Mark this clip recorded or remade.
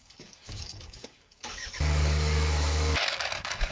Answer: remade